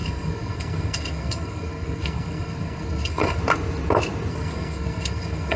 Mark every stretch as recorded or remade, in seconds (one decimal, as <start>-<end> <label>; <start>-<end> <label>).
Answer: 0.0-3.4 remade; 3.4-4.3 recorded; 4.3-5.6 remade